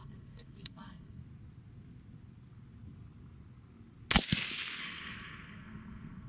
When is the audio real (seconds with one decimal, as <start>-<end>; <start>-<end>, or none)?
1.2-4.8